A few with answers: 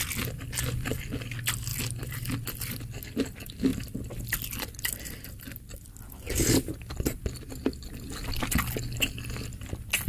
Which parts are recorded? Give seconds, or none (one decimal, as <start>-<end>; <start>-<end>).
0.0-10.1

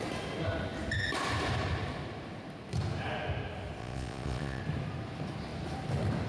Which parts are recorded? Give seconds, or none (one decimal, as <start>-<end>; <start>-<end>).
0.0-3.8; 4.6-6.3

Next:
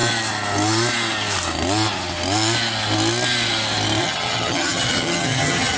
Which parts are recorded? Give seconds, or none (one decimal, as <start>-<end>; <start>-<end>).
0.0-4.0

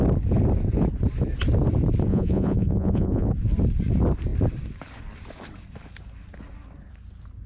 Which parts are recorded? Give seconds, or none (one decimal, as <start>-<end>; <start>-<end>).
0.0-2.1; 3.3-7.5

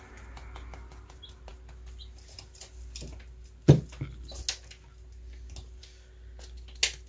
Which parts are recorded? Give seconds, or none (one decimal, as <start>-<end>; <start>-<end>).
0.0-7.1